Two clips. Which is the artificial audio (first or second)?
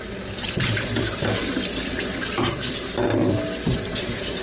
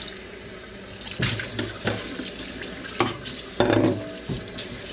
first